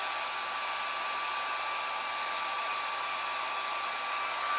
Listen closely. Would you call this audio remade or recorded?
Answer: recorded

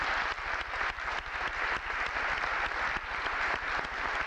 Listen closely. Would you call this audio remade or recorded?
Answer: recorded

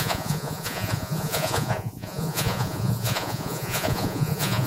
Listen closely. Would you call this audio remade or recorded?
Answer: remade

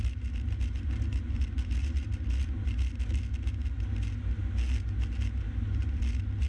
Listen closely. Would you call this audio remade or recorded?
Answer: recorded